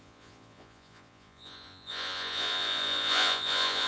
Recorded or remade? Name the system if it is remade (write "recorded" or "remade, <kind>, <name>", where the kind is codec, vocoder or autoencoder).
remade, vocoder, Vocos